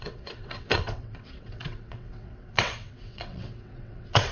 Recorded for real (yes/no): no